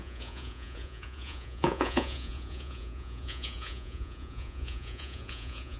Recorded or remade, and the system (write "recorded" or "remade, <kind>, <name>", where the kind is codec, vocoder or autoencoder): remade, vocoder, Vocos